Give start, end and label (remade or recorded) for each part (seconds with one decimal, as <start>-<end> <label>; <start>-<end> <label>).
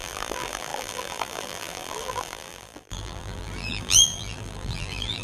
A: 0.0-5.2 remade